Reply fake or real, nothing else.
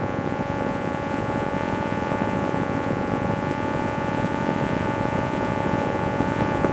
fake